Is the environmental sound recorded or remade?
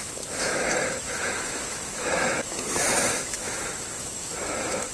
remade